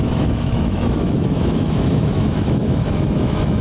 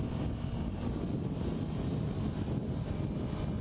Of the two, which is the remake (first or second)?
first